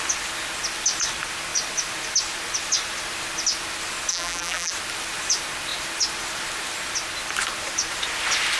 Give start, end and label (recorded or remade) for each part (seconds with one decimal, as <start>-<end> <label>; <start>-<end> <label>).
0.0-4.1 recorded; 4.1-4.7 remade; 4.7-8.6 recorded